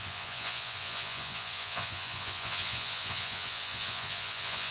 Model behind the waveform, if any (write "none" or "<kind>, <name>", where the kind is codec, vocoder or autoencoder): vocoder, Vocos